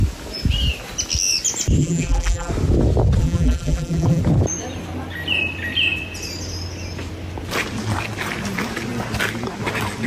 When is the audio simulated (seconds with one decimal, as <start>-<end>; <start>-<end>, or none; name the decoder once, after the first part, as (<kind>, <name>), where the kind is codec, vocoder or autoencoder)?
1.8-2.5 (vocoder, BigVGAN v2); 3.2-4.2